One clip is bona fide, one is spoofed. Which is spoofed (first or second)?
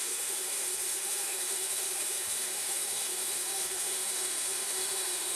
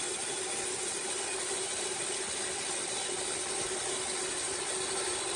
first